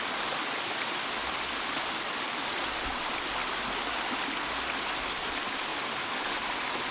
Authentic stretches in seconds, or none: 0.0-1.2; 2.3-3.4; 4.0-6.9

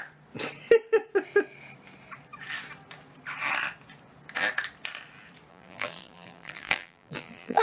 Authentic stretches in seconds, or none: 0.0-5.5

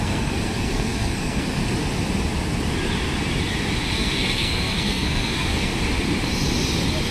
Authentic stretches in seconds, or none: 1.6-3.9; 5.7-7.1

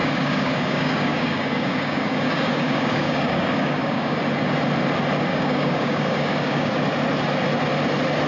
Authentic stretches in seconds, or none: 4.2-5.3; 6.7-8.3

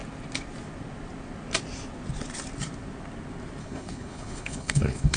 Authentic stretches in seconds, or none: 0.0-3.6

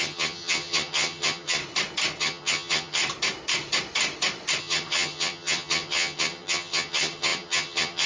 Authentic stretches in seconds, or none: 1.6-2.2; 3.0-4.6